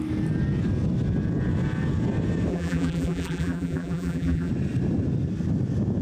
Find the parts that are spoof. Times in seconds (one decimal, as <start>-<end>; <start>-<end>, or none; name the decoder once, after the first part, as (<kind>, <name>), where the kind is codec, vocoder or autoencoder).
2.5-4.5 (vocoder, BigVGAN v2)